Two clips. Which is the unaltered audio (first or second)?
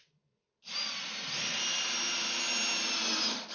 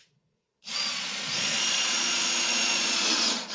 first